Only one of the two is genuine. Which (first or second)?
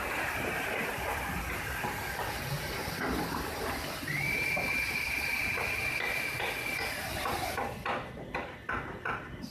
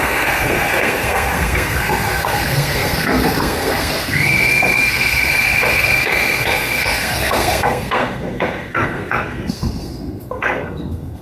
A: first